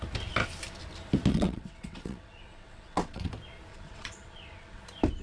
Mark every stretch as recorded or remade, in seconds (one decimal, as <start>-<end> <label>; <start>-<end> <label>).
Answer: 0.0-1.3 recorded; 1.3-3.3 remade; 3.3-3.7 recorded; 3.7-4.8 remade; 4.8-5.2 recorded